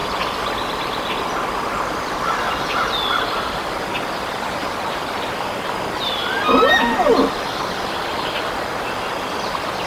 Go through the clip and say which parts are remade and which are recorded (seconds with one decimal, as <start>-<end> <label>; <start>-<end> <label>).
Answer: 0.0-4.2 recorded; 4.2-6.2 remade; 6.2-9.9 recorded